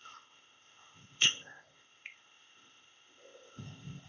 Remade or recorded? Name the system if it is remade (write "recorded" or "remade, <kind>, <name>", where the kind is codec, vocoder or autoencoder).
remade, codec, ZipCodec